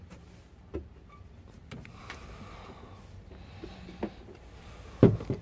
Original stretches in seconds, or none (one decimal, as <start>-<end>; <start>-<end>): 0.0-5.4